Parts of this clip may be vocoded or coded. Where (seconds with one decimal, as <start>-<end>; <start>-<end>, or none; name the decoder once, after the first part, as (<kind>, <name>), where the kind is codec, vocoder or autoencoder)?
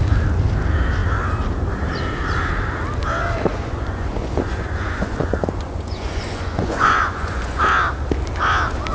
3.5-7.6 (vocoder, Vocos)